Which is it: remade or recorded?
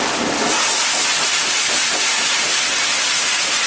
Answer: recorded